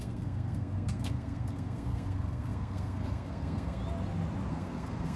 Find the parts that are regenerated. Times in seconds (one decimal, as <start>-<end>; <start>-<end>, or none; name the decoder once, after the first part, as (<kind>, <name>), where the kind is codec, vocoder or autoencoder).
0.0-3.8 (codec, SNAC); 4.5-5.2